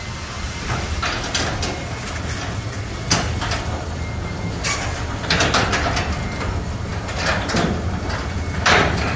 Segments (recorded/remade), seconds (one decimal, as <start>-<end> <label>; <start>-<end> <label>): 0.0-9.2 recorded